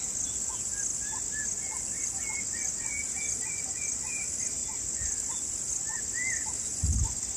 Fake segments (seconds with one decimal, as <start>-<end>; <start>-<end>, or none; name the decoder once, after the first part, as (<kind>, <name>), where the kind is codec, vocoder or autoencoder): 4.6-6.0 (vocoder, BigVGAN v2)